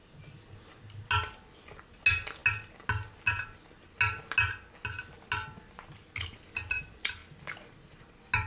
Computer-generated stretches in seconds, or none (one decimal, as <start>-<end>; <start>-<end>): none